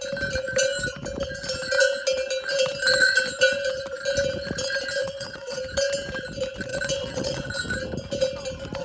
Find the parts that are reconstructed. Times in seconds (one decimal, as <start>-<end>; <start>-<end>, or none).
5.0-5.6; 6.7-7.5